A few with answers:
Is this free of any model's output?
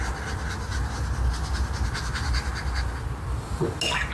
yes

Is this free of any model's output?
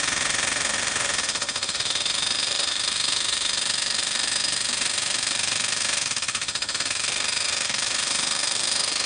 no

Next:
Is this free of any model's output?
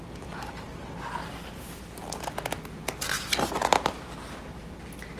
yes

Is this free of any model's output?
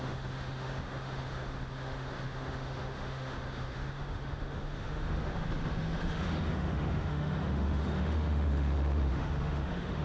no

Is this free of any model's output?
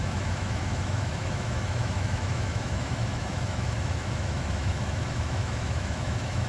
no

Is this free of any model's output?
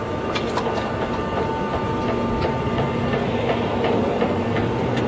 yes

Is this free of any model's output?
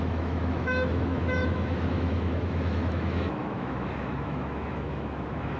no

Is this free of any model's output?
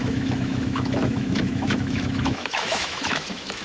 no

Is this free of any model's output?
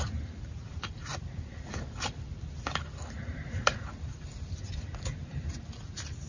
yes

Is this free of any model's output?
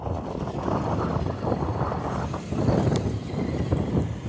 yes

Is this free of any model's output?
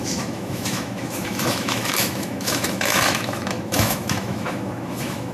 no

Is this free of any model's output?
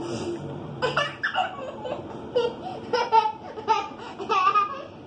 yes